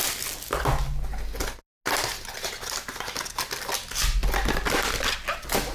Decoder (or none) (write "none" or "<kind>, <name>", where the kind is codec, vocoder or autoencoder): none